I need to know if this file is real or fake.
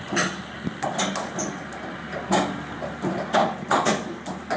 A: real